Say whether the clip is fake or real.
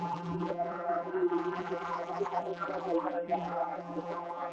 fake